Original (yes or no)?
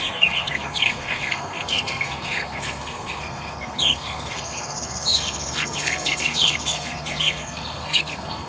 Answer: no